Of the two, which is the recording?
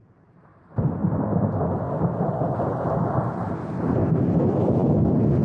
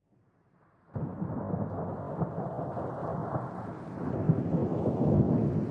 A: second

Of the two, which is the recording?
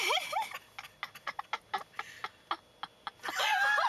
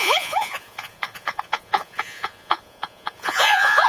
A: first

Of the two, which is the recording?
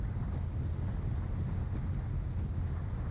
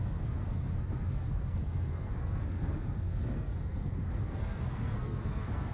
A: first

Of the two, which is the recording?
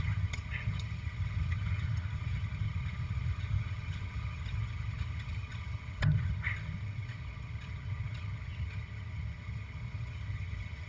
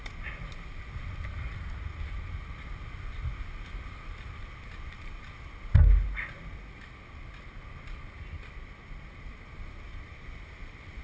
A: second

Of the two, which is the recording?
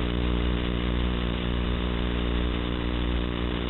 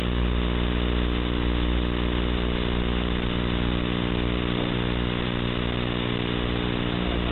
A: second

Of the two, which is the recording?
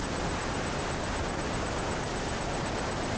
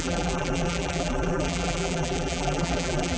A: first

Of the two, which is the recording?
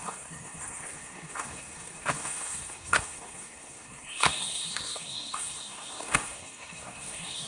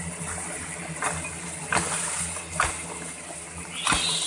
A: second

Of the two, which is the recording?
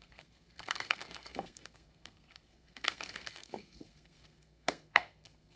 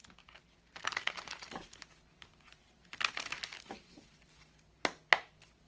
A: second